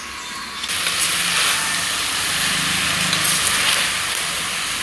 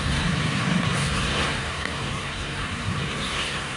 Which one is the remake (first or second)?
second